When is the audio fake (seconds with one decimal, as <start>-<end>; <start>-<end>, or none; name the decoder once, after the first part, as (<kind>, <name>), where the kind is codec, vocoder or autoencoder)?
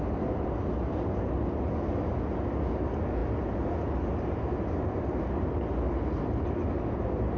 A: none